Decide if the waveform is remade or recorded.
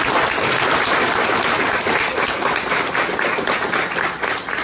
recorded